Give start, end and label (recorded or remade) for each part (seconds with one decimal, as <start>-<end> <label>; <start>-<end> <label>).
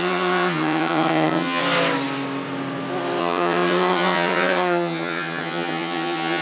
0.0-1.6 remade; 1.6-3.2 recorded; 3.2-6.4 remade